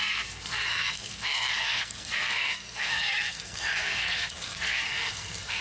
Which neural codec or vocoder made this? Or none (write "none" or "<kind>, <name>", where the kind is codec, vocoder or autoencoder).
codec, SNAC